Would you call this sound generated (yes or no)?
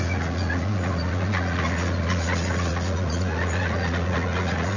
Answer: yes